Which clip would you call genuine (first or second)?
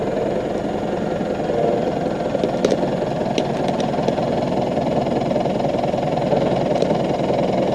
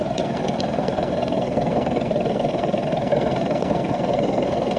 first